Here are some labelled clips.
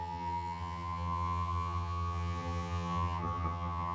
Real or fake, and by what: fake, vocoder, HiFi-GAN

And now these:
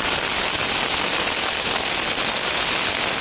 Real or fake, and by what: real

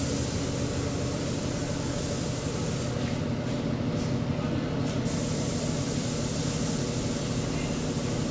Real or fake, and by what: real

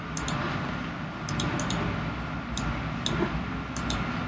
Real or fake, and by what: real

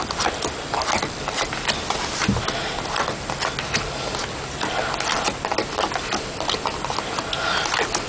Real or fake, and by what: real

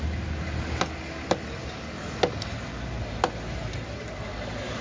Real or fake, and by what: real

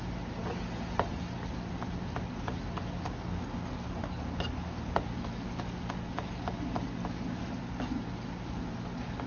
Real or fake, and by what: real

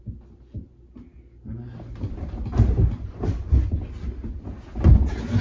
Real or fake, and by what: real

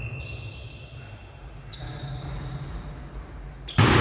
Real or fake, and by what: real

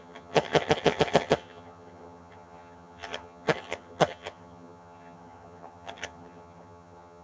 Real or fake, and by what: fake, vocoder, HiFi-GAN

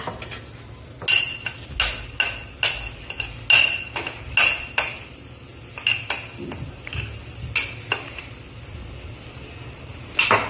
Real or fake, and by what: real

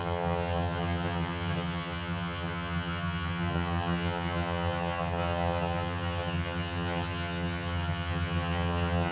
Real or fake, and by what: fake, vocoder, HiFi-GAN